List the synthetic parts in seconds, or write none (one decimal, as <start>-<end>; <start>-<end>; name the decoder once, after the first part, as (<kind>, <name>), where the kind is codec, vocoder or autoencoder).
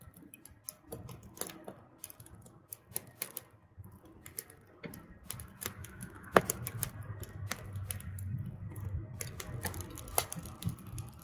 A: 5.8-6.4 (autoencoder, DAC-VAE)